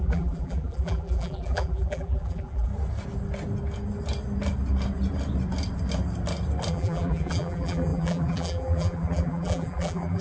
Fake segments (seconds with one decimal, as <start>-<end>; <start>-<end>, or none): 0.0-2.7; 6.7-10.2